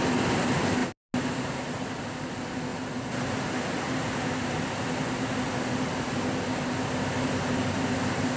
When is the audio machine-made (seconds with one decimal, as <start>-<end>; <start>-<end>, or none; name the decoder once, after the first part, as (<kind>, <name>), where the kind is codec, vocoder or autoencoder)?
none